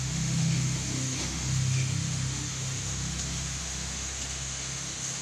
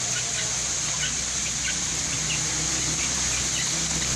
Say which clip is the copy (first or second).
first